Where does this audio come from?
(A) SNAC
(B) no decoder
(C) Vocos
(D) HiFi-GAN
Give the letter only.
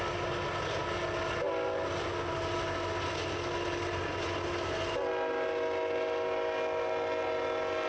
B